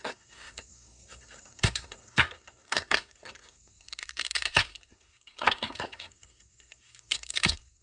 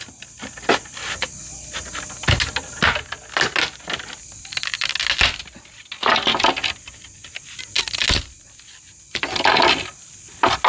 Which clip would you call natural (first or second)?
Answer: second